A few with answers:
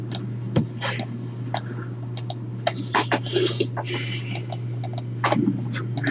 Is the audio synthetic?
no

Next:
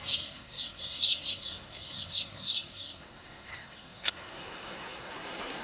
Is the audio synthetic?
yes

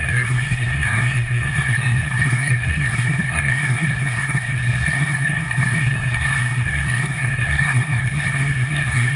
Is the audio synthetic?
yes